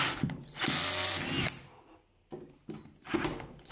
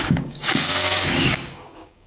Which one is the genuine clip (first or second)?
first